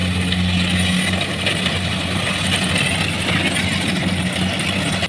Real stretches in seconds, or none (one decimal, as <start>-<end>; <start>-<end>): 0.0-5.1